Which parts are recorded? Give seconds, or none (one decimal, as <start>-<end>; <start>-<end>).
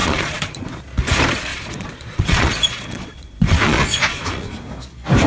0.8-1.5; 4.6-5.3